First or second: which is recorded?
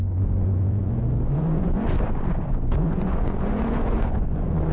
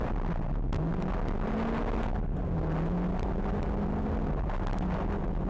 second